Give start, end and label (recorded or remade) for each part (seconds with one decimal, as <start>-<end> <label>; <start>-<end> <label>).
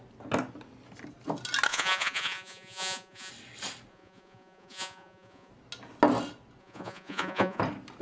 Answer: 0.0-1.7 recorded; 1.7-3.3 remade; 3.3-3.9 recorded; 3.9-5.5 remade; 5.5-6.6 recorded; 6.6-7.6 remade; 7.6-8.0 recorded